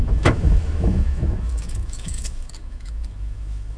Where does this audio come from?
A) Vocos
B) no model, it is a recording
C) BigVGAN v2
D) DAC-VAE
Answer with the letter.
D